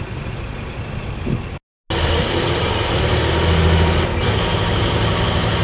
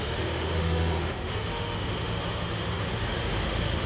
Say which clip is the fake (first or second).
second